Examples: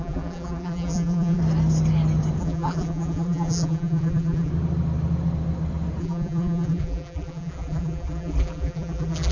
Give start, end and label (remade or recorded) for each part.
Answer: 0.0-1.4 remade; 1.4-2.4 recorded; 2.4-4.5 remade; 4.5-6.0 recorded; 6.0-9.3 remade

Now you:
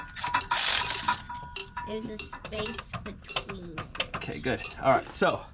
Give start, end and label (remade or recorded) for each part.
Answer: 0.0-1.6 recorded; 1.6-2.8 remade; 2.8-5.5 recorded

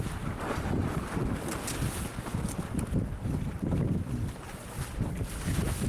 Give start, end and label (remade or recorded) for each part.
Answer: 0.0-5.9 recorded

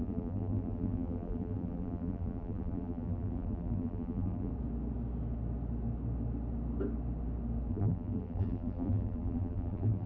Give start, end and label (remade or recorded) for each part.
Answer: 0.0-4.5 remade; 4.5-7.7 recorded; 7.7-10.1 remade